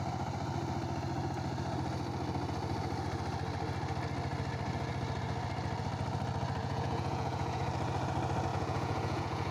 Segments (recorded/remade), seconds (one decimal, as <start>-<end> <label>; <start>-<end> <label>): 0.0-6.6 recorded; 6.6-7.6 remade; 7.6-8.5 recorded; 8.5-9.5 remade